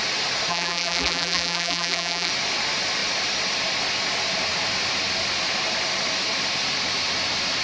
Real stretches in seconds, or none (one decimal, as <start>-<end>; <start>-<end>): 0.0-0.5; 2.3-7.6